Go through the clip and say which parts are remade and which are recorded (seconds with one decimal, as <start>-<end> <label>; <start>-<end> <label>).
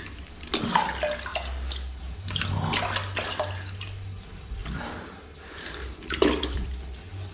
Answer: 0.0-4.6 recorded; 4.6-6.6 remade; 6.6-7.3 recorded